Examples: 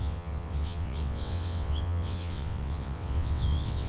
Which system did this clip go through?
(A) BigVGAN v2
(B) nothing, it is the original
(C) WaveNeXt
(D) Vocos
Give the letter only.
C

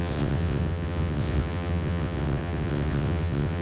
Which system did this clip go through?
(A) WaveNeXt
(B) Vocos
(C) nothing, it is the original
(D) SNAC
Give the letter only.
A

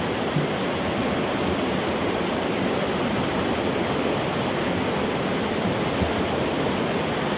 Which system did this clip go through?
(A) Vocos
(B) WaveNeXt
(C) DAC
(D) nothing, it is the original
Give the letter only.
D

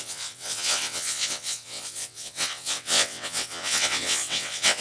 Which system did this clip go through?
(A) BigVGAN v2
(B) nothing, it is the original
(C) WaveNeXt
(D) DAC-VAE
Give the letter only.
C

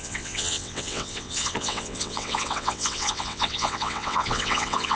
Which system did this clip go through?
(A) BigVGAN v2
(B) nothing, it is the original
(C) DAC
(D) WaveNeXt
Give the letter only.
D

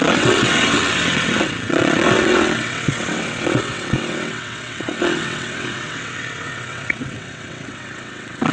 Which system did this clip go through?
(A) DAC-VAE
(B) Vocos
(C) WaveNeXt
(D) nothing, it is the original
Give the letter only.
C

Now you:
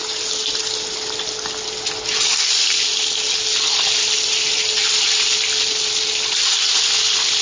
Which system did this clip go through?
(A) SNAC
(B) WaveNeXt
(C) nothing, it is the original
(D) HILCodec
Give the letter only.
C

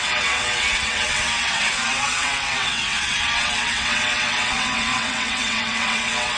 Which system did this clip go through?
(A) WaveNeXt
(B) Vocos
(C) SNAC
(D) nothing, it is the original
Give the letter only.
A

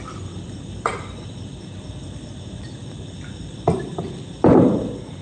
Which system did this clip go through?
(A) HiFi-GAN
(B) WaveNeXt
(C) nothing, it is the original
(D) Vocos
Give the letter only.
C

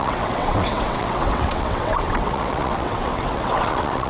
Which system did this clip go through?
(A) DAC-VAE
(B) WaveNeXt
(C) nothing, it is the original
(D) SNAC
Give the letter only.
B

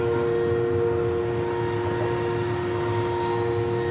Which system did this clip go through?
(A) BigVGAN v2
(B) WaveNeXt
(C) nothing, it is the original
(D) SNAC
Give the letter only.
C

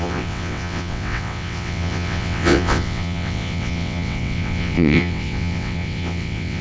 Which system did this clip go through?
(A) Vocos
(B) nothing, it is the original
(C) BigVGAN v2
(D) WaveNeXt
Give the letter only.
D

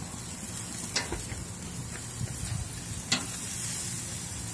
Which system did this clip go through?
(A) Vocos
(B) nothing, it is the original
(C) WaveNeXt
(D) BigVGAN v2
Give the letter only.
B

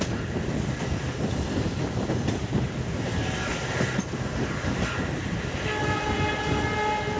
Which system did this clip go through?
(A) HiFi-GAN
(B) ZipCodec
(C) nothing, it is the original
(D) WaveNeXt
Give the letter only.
C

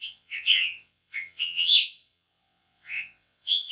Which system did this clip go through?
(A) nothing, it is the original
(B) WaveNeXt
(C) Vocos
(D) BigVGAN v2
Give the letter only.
B